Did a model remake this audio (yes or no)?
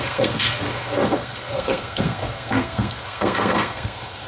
yes